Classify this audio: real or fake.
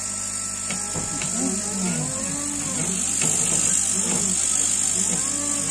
real